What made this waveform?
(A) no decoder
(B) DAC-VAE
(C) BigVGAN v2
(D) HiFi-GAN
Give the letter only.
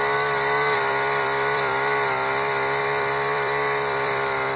C